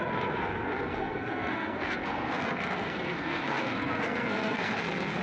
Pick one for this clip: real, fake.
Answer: fake